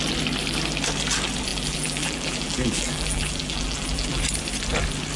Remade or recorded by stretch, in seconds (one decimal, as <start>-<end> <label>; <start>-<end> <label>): 0.0-1.5 recorded; 1.5-4.2 remade; 4.2-5.2 recorded